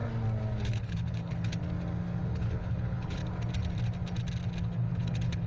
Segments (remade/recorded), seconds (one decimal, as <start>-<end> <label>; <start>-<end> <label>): 0.0-0.6 recorded; 0.6-1.6 remade; 1.6-2.3 recorded; 2.3-3.2 remade; 3.2-4.6 recorded; 4.6-5.5 remade